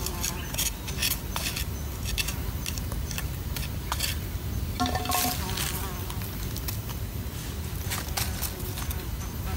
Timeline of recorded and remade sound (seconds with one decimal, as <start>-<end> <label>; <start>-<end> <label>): 0.0-4.1 recorded; 4.1-5.0 remade; 5.0-9.6 recorded